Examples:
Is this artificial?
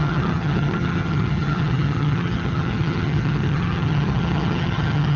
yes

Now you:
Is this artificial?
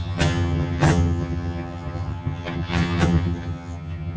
yes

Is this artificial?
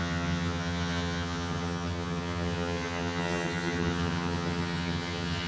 yes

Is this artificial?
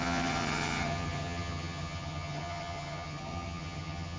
yes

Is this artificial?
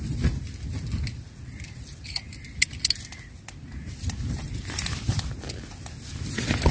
no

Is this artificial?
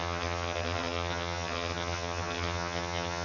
yes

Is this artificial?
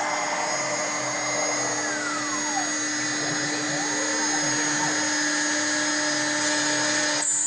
no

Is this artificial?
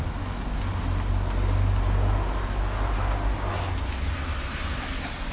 no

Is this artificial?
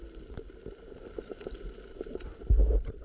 no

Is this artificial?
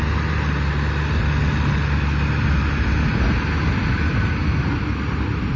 no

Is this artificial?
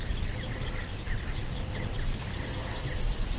no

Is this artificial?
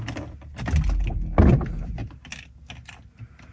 no